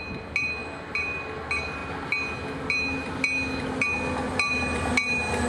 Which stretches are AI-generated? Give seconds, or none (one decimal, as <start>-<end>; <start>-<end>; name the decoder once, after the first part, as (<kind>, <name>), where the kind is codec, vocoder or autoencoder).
none